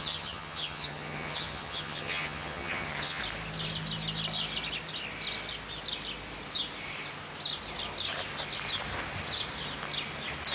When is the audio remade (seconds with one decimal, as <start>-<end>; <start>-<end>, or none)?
0.0-3.2